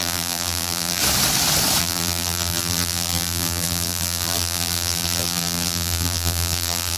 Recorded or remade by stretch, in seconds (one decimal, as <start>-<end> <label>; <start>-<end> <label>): 0.0-1.0 remade; 1.0-1.8 recorded; 1.8-7.0 remade